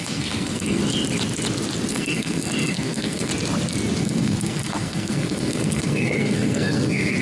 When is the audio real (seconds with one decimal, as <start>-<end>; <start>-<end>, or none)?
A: 0.8-1.9; 3.3-4.0